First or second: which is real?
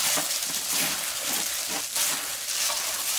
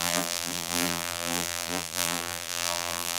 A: first